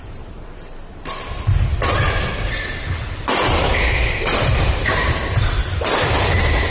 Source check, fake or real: fake